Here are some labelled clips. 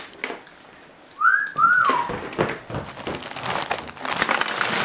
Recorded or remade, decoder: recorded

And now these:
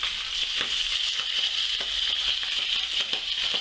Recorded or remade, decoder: recorded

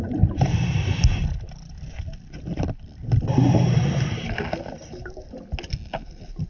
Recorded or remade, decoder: recorded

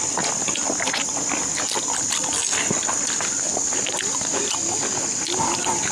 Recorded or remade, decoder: recorded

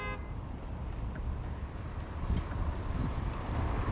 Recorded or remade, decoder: recorded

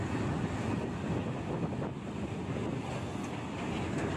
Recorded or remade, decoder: recorded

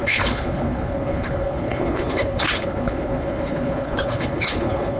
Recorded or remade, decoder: remade, codec, HILCodec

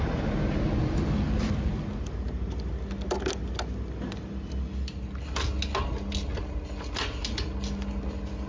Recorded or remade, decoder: recorded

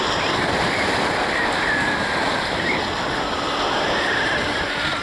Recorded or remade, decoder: recorded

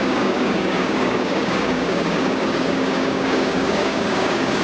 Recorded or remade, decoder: remade, codec, DAC